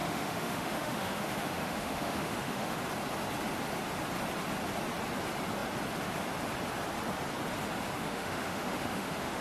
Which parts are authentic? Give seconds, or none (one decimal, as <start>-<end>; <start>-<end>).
2.8-8.0